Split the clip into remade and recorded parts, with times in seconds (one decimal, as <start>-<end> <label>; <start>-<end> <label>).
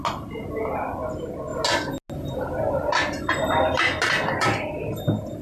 0.0-5.4 recorded